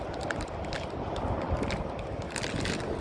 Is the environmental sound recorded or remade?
recorded